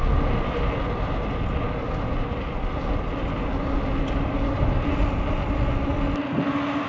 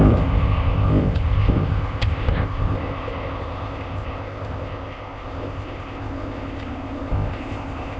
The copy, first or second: second